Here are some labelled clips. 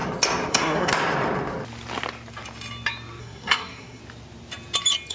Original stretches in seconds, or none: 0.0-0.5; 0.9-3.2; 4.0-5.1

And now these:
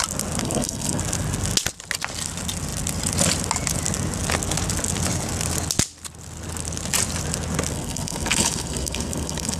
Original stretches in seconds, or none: 0.0-0.4; 1.0-7.7

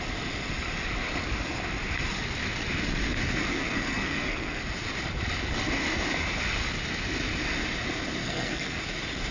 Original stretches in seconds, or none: 0.0-3.5; 4.6-8.2; 8.8-9.3

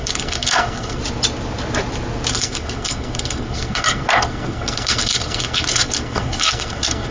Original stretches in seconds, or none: 1.0-2.3

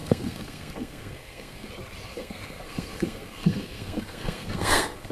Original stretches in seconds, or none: 1.7-2.1

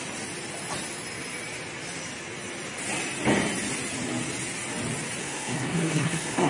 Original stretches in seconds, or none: 0.0-5.2